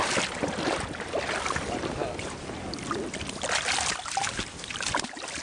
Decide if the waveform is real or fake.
real